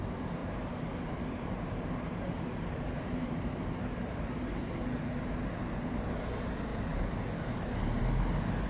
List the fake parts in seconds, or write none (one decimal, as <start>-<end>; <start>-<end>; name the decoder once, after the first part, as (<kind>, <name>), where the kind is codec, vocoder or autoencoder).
0.4-4.7 (vocoder, BigVGAN v2)